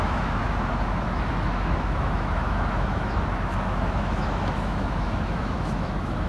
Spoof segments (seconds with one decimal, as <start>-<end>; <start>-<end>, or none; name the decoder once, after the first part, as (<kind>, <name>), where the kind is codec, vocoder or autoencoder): 0.0-6.3 (autoencoder, DAC-VAE)